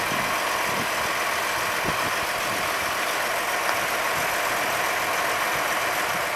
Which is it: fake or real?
real